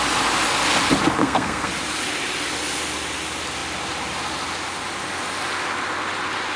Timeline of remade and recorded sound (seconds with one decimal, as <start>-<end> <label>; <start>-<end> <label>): 0.0-1.2 recorded; 1.2-1.7 remade; 1.7-6.6 recorded